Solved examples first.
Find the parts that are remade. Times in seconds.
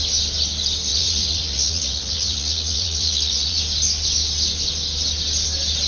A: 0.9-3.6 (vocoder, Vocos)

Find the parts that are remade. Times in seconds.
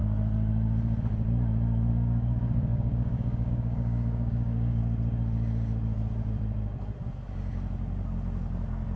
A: 1.9-4.8 (codec, DAC)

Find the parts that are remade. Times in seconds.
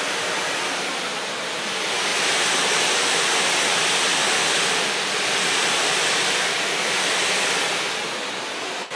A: 2.1-5.8 (vocoder, BigVGAN v2)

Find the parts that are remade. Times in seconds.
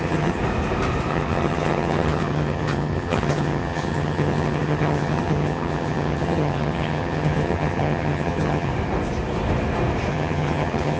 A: 0.0-0.4 (vocoder, HiFi-GAN); 1.1-8.7; 10.1-11.0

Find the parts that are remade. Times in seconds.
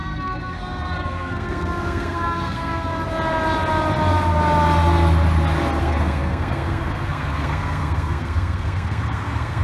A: 0.0-2.9 (codec, SNAC); 5.8-9.6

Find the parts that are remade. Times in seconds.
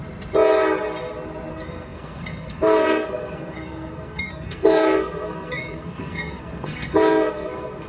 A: 1.5-7.9 (codec, SNAC)